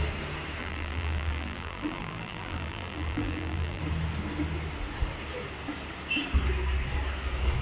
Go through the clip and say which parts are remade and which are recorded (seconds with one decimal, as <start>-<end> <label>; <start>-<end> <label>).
0.0-0.6 recorded; 0.6-3.8 remade; 3.8-7.6 recorded